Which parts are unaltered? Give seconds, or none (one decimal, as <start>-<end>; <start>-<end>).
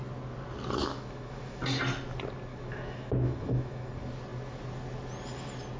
0.0-0.8; 1.6-2.5; 3.9-5.8